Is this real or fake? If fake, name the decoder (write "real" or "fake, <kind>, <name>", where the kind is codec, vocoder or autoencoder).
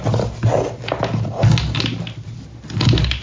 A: real